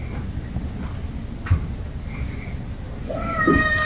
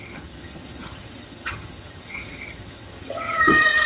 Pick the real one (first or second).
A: first